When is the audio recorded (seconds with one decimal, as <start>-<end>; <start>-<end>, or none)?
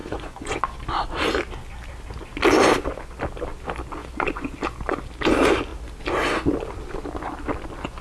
0.6-4.0; 4.6-8.0